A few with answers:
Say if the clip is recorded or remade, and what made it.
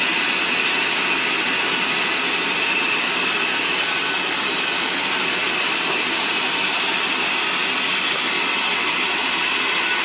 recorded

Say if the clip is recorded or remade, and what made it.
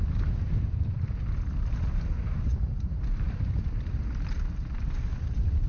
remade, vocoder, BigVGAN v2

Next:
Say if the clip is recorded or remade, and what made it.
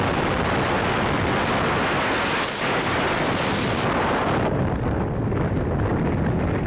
recorded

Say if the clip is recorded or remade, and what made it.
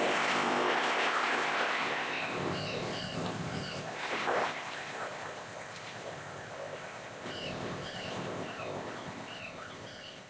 remade, codec, ZipCodec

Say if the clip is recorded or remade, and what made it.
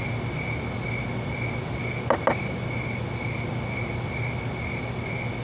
recorded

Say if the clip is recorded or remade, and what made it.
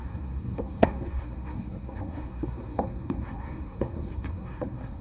remade, codec, SNAC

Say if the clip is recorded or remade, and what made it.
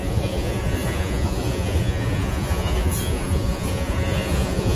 remade, vocoder, Vocos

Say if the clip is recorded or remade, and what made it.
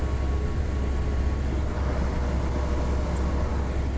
recorded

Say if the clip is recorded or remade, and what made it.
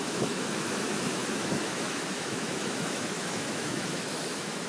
remade, autoencoder, DAC-VAE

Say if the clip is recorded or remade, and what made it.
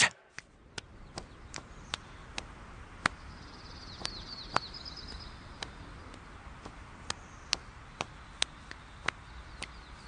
recorded